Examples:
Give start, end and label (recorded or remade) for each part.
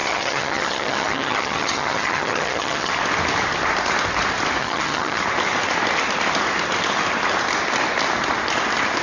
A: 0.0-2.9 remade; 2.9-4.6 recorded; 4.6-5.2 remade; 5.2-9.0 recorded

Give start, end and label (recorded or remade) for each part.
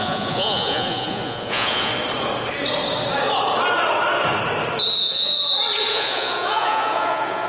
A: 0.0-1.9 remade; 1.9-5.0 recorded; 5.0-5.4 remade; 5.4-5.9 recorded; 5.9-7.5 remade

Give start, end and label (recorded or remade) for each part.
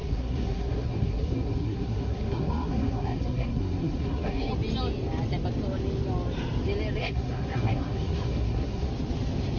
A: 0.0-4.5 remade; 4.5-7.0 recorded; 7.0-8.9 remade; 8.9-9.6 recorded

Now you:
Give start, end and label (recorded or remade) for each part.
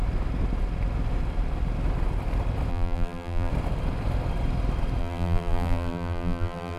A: 0.0-2.7 recorded; 2.7-3.5 remade; 3.5-5.0 recorded; 5.0-6.8 remade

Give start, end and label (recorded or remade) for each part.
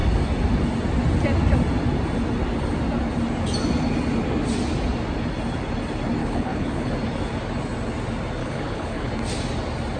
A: 0.0-6.2 recorded; 6.2-6.9 remade; 6.9-8.4 recorded; 8.4-9.1 remade; 9.1-10.0 recorded